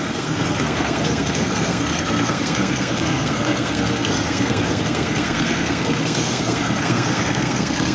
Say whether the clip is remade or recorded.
remade